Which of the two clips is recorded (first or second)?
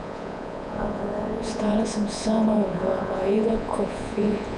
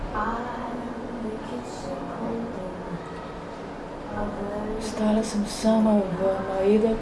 second